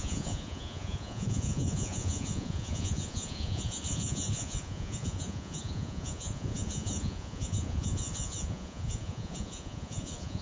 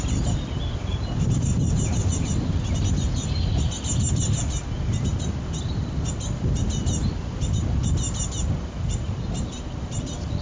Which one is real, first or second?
second